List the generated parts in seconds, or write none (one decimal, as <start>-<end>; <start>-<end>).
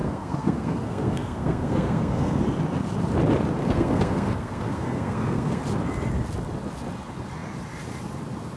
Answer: 0.0-2.4; 3.6-5.6